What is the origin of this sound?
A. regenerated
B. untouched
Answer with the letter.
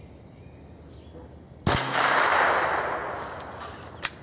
B